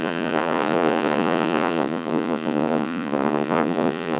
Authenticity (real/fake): fake